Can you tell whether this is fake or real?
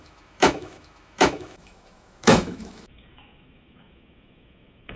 fake